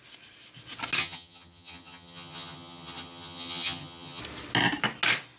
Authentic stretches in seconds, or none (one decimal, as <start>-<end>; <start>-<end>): 0.0-1.0; 4.2-5.4